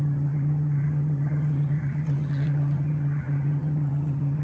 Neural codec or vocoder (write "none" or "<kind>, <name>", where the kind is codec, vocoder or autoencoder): vocoder, HiFi-GAN